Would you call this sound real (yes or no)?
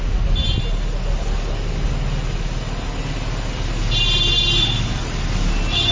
yes